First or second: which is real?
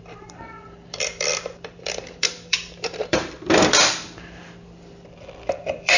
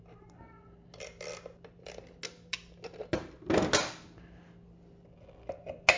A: second